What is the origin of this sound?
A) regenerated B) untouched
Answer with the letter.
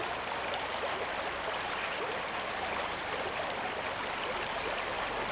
B